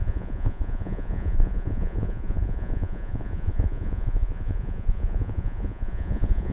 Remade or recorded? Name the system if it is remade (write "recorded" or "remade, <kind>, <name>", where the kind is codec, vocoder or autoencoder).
remade, vocoder, Vocos